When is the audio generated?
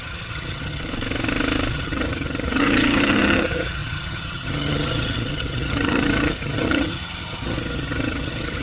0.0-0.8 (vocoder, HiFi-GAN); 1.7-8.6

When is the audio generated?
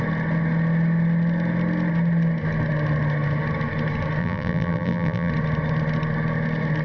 4.2-5.3 (vocoder, BigVGAN v2)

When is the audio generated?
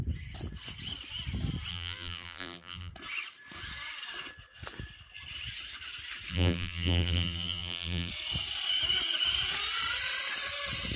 1.7-2.9 (vocoder, BigVGAN v2); 6.3-8.1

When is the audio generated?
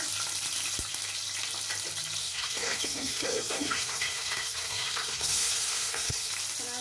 2.2-6.3 (codec, SNAC)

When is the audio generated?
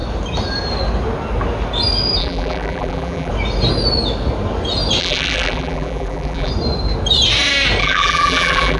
2.2-3.3 (vocoder, BigVGAN v2); 5.0-6.5; 7.8-8.8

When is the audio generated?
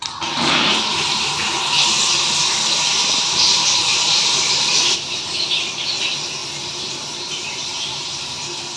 3.9-5.4 (vocoder, BigVGAN v2); 6.4-8.1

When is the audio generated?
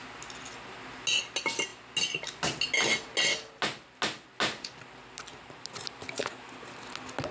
none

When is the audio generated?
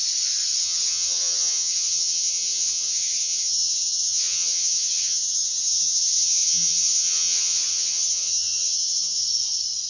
0.6-9.2 (vocoder, HiFi-GAN)